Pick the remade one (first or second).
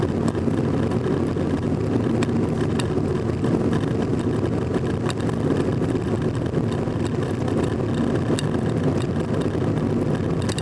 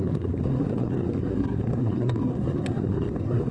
second